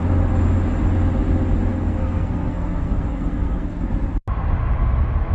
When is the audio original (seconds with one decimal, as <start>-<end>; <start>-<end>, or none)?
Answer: 0.0-1.7; 3.9-5.3